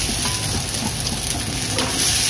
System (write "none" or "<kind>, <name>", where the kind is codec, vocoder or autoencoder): none